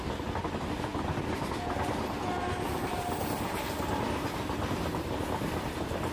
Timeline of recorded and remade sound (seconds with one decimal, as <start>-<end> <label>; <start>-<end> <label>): 0.0-6.1 recorded